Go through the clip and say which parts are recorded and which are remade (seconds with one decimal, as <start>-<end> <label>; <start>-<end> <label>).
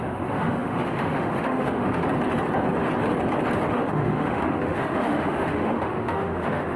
0.0-2.0 remade; 2.0-3.7 recorded; 3.7-6.8 remade